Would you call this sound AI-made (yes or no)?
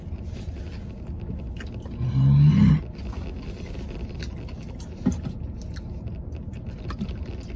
no